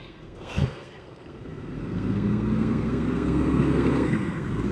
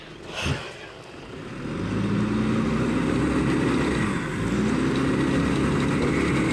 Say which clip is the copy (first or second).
first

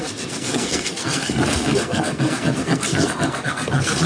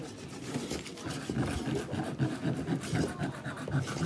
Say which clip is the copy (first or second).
first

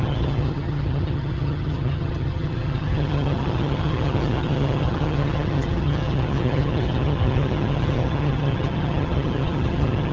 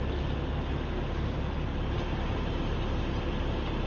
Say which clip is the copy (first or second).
first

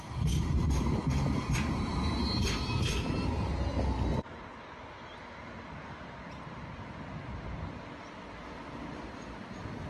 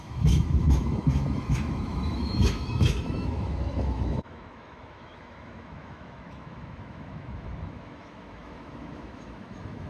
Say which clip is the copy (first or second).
second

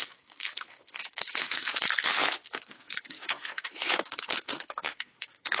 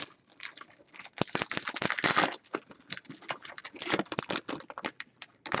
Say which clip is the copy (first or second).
first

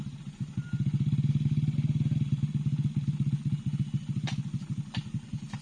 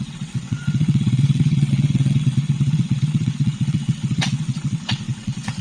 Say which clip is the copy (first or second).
second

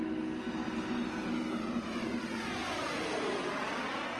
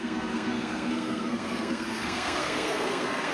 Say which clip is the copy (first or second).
second